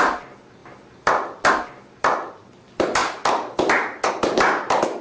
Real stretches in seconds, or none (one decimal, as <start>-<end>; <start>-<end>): 0.0-5.0